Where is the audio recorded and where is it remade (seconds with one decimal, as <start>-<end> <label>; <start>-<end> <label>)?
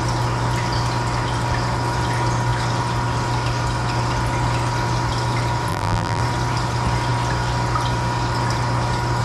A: 0.0-5.7 recorded; 5.7-6.2 remade; 6.2-9.2 recorded